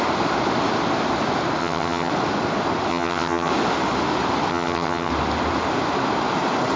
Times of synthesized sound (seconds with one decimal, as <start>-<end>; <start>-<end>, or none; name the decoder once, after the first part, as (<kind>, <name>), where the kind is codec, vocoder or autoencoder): 1.6-2.1 (vocoder, HiFi-GAN); 2.9-3.5; 4.5-5.1